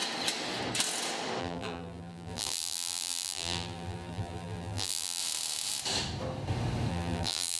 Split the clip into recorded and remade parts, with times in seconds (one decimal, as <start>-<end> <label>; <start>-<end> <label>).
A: 0.0-1.4 recorded; 1.4-5.2 remade; 5.2-6.9 recorded; 6.9-7.6 remade